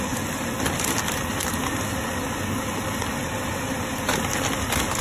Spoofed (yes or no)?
no